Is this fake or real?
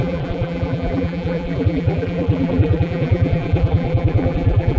fake